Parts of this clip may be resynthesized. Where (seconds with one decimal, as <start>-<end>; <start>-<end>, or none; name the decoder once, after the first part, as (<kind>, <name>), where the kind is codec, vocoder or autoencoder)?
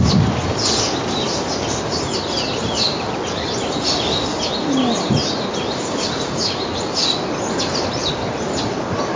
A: none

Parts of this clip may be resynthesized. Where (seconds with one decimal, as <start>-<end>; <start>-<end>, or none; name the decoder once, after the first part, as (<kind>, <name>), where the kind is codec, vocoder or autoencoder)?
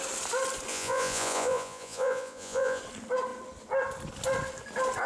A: 0.7-2.8 (vocoder, Vocos)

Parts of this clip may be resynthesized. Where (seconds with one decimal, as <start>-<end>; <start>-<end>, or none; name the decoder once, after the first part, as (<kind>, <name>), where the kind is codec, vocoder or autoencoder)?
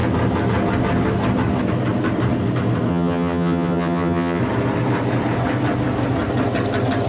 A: 2.9-4.4 (vocoder, HiFi-GAN)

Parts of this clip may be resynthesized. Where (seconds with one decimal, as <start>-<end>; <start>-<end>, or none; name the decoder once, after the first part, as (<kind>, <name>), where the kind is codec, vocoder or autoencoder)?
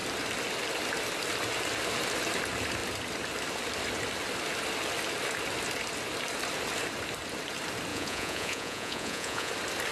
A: 7.9-9.5 (vocoder, Vocos)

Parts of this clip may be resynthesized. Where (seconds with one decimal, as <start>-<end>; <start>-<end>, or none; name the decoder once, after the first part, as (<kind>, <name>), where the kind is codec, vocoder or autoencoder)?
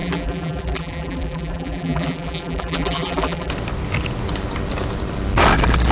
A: 0.0-3.5 (vocoder, BigVGAN v2)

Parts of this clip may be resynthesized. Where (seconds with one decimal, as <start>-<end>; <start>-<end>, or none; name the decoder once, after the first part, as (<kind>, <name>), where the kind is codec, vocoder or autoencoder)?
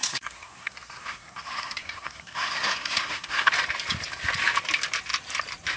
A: 0.0-3.5 (codec, SNAC)